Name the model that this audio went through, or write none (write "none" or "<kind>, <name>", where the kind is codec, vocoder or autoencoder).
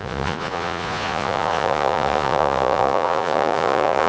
vocoder, Vocos